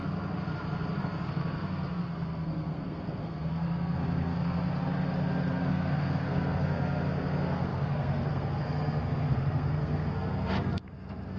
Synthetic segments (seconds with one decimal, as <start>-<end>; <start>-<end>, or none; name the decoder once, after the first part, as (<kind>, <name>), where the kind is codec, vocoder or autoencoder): 1.0-4.7 (codec, SNAC); 5.7-11.4